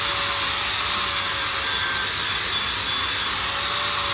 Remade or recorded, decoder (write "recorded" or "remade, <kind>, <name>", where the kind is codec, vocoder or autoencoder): recorded